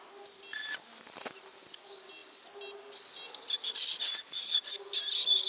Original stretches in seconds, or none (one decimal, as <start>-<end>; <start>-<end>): 0.0-5.5